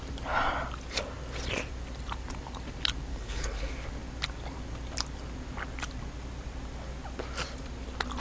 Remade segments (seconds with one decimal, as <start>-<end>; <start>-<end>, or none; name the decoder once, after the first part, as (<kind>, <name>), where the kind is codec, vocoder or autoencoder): 3.1-3.7 (codec, HILCodec)